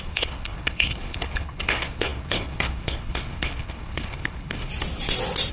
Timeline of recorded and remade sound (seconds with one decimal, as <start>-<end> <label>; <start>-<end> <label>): 0.0-4.7 remade; 4.7-5.5 recorded